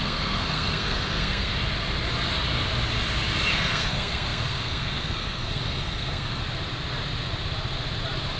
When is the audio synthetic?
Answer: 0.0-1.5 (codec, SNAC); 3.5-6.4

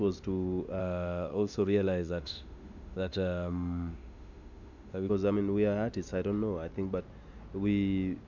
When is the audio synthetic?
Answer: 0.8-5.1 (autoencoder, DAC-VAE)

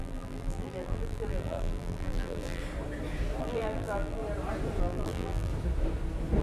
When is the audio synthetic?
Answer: 0.0-2.6 (vocoder, BigVGAN v2); 3.4-4.2; 4.8-5.5

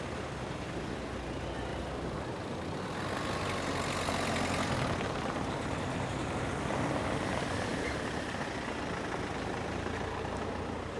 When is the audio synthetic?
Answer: 1.7-3.0 (vocoder, BigVGAN v2); 7.7-8.3